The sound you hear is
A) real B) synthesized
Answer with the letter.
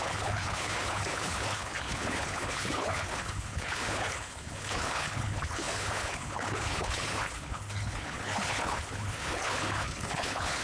B